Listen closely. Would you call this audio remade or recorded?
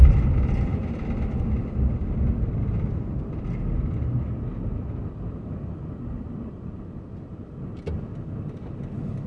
recorded